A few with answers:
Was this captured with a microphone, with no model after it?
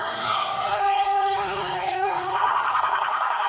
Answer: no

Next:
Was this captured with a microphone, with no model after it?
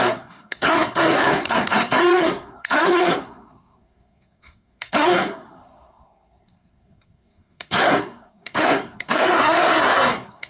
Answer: no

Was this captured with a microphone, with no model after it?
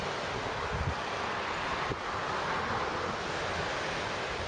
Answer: yes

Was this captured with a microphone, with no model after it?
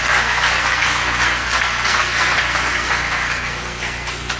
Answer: no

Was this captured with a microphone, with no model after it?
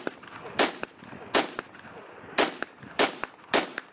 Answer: yes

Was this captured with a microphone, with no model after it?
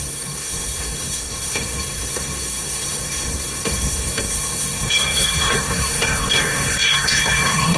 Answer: no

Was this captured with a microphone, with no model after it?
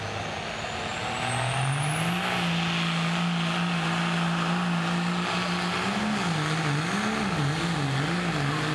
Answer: yes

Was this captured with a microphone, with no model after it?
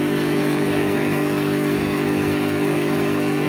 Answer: no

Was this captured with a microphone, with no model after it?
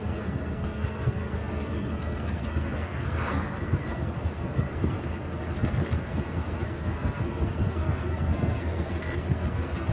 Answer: no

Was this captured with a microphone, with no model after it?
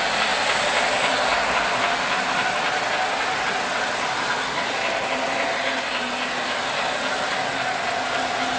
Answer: yes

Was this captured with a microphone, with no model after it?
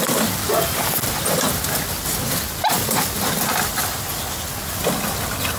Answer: yes